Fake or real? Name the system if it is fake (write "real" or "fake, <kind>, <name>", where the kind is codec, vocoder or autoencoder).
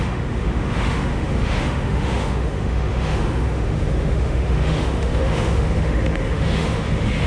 fake, autoencoder, DAC-VAE